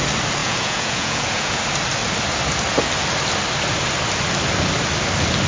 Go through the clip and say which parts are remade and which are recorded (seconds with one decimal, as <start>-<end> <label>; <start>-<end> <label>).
0.0-0.4 recorded; 0.4-1.6 remade; 1.6-5.5 recorded

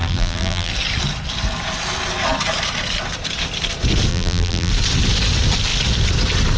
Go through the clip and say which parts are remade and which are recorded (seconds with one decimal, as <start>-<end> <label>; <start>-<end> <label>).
0.0-0.7 remade; 0.7-4.1 recorded; 4.1-4.7 remade; 4.7-6.6 recorded